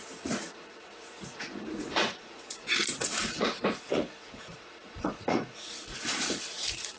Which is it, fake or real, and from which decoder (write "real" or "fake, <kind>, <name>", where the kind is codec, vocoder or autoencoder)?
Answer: fake, vocoder, Vocos